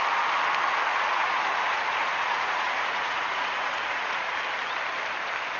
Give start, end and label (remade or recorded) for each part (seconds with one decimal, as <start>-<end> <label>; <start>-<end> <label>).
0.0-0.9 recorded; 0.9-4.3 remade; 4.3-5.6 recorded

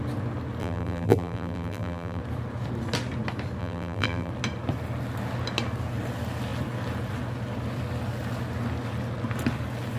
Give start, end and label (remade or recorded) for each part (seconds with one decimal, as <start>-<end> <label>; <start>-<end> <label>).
0.0-0.6 recorded; 0.6-2.2 remade; 2.2-3.6 recorded; 3.6-4.3 remade; 4.3-10.0 recorded

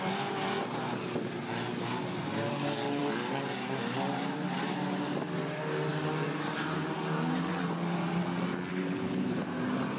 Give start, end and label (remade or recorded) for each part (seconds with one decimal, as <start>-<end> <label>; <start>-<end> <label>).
0.0-8.7 recorded; 8.7-9.4 remade; 9.4-10.0 recorded